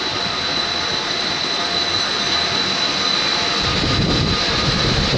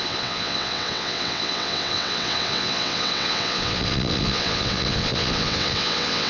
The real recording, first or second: first